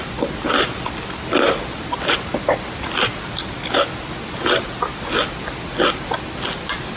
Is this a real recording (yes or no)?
yes